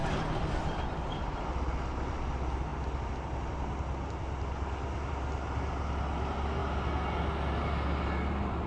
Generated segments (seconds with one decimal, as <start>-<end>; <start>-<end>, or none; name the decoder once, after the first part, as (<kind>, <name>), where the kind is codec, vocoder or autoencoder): none